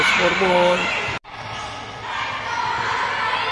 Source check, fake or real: real